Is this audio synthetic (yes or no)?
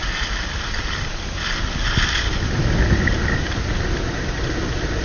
no